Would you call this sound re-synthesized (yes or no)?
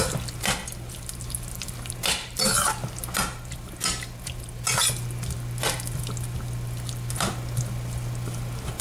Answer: no